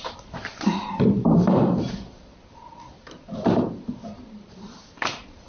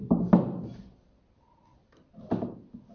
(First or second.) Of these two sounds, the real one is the second